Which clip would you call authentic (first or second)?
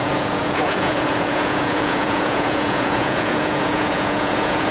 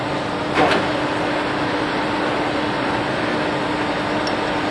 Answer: second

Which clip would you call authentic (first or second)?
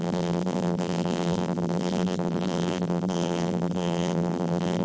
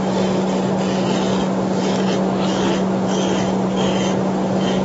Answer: second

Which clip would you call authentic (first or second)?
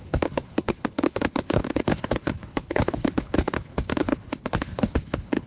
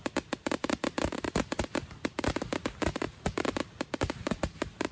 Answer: second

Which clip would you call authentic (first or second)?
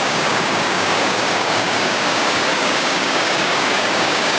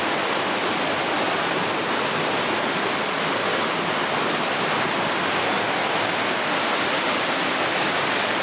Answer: second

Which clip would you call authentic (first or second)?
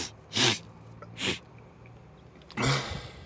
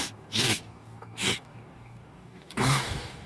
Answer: first